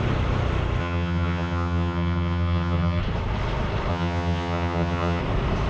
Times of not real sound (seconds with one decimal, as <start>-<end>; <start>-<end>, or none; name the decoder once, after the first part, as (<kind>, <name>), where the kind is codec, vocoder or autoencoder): 0.8-3.0 (vocoder, HiFi-GAN); 3.9-5.2